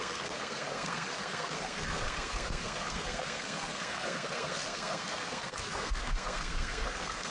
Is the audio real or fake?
fake